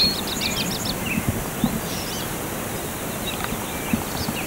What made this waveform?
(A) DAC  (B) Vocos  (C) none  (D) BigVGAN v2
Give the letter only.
C